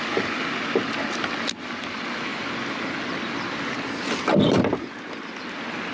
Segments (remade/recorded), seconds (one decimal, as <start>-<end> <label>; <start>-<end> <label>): 0.0-5.9 recorded